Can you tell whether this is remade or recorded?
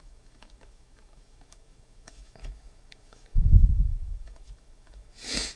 remade